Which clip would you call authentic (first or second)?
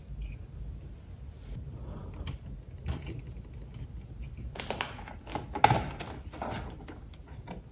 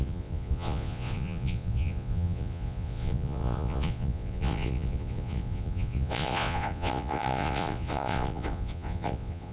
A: first